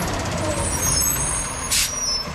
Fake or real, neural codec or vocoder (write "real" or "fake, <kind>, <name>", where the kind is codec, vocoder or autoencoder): fake, vocoder, BigVGAN v2